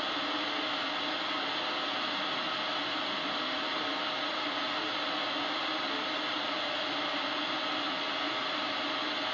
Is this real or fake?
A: real